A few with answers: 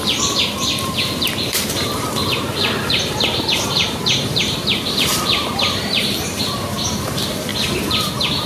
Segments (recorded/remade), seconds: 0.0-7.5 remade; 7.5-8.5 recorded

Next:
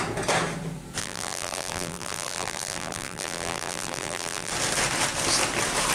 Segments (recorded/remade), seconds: 0.0-1.0 recorded; 1.0-4.5 remade; 4.5-5.9 recorded